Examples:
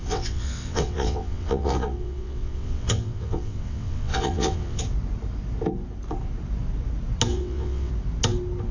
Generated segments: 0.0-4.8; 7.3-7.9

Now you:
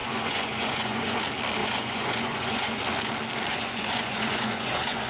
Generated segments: 0.0-1.2; 1.6-2.8; 3.5-5.1

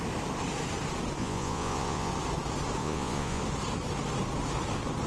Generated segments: 1.2-2.1; 2.8-3.4

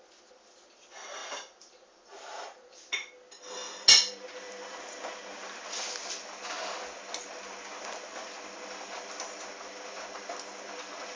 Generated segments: 1.2-3.1

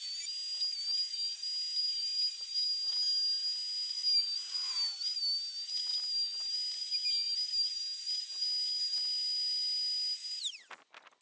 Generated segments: none

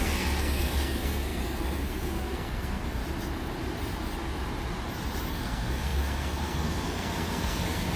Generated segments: 0.0-3.0; 5.3-8.0

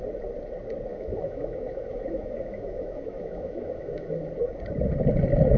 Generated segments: 0.9-4.3

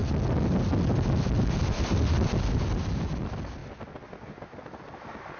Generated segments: none